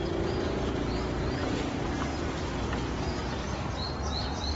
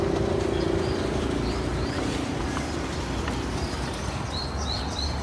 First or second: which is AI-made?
second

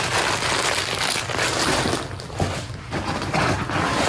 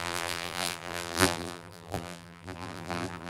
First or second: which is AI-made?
second